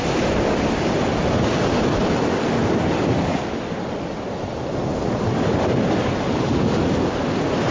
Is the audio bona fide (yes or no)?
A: yes